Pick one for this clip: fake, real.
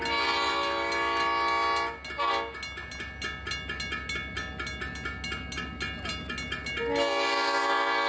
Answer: real